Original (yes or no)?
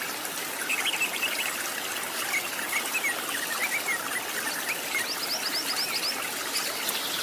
yes